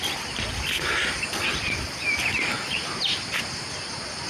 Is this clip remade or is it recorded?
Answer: recorded